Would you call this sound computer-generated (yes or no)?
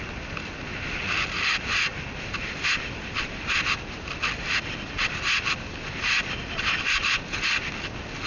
no